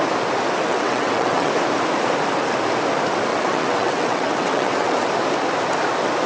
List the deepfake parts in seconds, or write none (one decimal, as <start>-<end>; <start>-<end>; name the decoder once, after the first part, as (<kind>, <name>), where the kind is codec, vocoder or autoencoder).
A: 0.7-1.5 (vocoder, WaveNeXt); 3.3-5.1